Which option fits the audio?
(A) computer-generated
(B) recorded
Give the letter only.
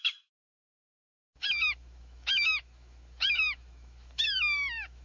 A